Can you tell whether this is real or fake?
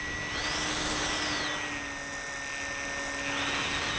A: real